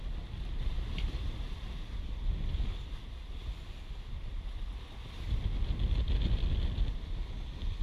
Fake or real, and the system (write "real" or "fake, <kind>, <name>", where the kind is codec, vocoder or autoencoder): real